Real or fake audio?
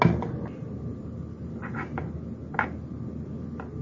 real